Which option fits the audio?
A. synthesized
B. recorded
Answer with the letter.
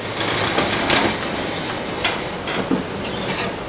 B